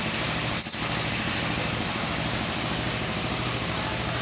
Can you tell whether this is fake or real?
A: real